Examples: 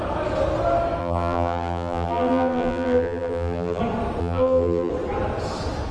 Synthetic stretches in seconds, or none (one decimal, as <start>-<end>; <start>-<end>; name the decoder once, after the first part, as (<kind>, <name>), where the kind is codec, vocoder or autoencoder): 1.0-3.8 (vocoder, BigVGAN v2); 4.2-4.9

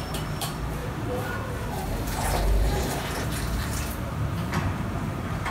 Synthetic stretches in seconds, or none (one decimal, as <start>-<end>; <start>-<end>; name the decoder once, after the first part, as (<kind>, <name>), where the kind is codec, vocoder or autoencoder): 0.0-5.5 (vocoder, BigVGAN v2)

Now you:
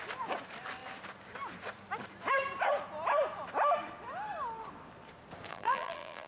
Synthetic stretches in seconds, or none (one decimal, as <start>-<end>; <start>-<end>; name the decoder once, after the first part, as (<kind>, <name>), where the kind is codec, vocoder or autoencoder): 5.5-6.3 (vocoder, BigVGAN v2)

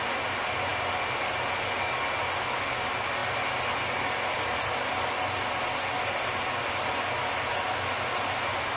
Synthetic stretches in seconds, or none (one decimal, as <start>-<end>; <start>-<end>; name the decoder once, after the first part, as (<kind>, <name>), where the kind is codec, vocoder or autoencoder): none